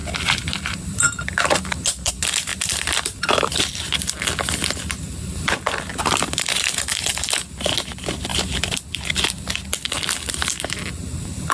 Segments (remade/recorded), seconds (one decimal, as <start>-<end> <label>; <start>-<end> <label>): 0.0-2.1 remade; 2.1-2.5 recorded; 2.5-4.0 remade; 4.0-5.9 recorded; 5.9-7.1 remade; 7.1-11.5 recorded